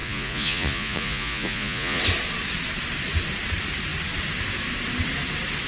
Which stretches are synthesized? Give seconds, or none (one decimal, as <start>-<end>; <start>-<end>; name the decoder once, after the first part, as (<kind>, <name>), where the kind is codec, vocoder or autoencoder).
0.0-2.0 (vocoder, Vocos)